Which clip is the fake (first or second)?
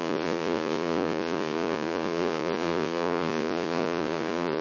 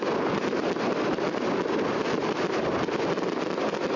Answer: first